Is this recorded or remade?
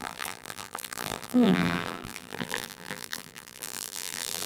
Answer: remade